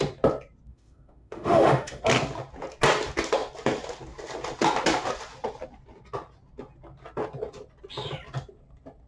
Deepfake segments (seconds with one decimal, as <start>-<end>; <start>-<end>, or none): 0.7-2.0